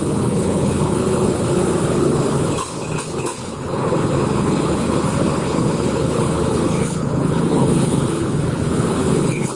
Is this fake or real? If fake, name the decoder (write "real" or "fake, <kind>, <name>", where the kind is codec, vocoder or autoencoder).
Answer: fake, codec, HILCodec